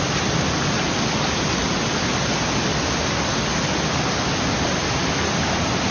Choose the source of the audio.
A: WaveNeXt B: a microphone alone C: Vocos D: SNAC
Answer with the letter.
B